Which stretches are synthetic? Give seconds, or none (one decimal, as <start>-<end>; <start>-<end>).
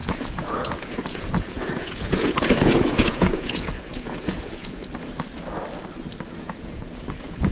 0.0-4.8; 6.4-7.5